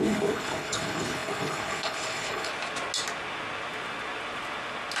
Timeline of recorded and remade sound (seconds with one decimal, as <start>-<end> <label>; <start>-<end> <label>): 0.0-2.5 remade; 2.5-5.0 recorded